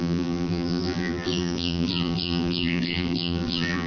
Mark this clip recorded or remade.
remade